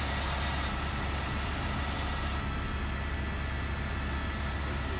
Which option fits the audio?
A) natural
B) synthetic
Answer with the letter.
A